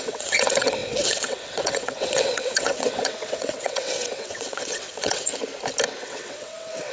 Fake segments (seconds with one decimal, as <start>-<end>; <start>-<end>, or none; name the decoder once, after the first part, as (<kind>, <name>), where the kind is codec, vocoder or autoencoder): 0.0-5.3 (vocoder, WaveNeXt); 6.0-6.9